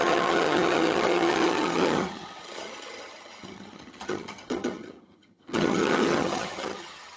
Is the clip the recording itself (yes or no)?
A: no